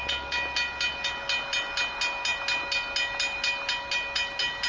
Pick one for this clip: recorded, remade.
recorded